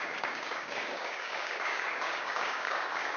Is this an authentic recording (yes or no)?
no